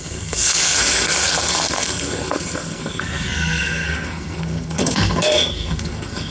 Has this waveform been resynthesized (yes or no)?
yes